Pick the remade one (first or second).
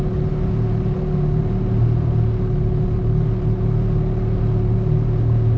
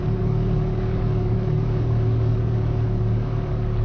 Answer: second